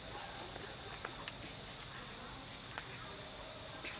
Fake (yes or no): no